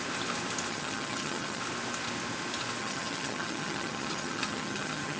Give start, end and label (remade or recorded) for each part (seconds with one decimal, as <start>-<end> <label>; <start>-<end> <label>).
0.0-0.7 recorded; 0.7-1.6 remade; 1.6-2.8 recorded; 2.8-5.2 remade